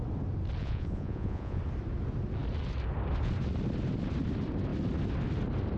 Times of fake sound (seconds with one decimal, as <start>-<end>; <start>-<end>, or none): 0.6-1.6